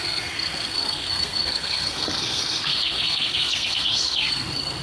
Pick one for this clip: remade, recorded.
remade